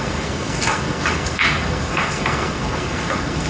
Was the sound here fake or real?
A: fake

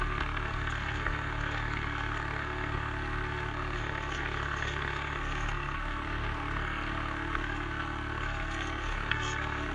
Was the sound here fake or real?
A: fake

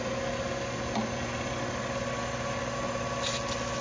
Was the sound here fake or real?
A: real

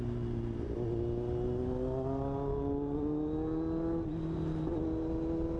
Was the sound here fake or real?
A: real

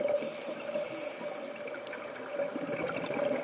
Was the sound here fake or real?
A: real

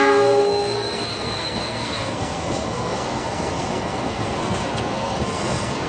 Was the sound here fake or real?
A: fake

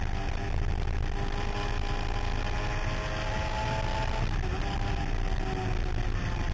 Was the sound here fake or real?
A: real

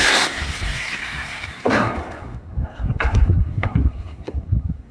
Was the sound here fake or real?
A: fake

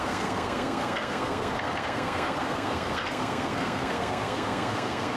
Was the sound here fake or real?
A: fake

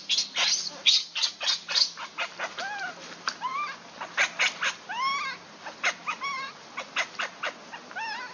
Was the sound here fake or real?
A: real